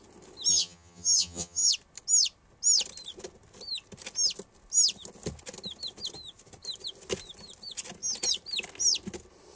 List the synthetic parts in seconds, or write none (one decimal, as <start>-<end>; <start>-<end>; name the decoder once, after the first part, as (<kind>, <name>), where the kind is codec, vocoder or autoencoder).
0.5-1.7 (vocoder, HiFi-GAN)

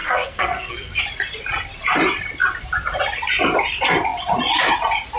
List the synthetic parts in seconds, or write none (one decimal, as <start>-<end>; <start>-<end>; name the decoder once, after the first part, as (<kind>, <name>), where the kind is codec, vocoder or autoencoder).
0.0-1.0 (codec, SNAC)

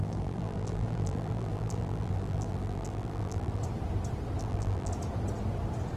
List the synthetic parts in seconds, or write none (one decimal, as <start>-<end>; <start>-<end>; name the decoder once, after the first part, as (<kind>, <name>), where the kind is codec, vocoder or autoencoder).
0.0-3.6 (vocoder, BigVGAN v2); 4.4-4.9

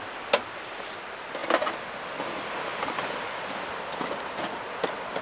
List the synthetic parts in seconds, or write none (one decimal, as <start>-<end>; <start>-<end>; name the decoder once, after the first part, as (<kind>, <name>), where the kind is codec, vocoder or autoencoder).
none

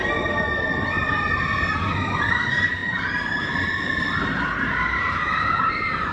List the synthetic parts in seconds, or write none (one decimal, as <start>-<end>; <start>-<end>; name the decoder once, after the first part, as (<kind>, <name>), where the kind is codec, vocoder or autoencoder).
2.8-5.0 (vocoder, BigVGAN v2)

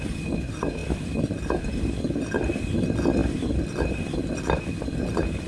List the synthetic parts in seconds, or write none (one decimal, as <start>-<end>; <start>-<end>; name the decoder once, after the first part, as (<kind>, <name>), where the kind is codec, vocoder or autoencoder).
none